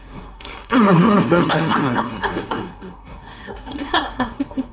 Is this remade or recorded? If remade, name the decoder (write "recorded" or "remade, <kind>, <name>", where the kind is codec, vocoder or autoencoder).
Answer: remade, codec, SNAC